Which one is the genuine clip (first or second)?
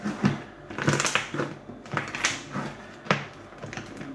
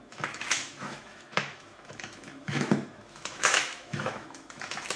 first